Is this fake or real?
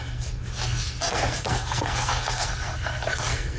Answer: fake